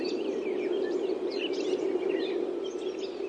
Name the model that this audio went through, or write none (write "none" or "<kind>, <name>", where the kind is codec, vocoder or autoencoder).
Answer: none